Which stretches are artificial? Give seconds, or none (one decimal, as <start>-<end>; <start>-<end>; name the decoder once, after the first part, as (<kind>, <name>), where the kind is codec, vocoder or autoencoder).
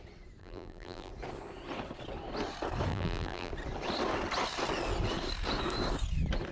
0.4-1.1 (vocoder, BigVGAN v2); 2.9-3.5